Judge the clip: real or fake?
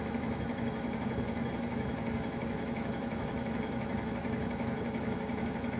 fake